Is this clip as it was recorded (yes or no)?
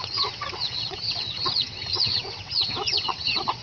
no